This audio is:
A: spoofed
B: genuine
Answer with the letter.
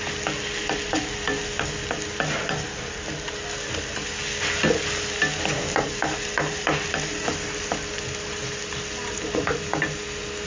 B